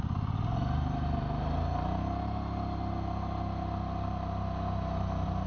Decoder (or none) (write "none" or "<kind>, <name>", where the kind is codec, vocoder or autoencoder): none